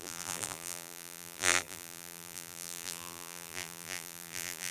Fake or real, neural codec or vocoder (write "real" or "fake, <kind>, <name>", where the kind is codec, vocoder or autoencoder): fake, vocoder, BigVGAN v2